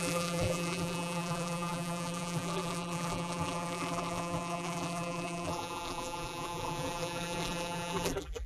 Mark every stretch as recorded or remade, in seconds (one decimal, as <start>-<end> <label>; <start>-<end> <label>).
0.0-8.5 remade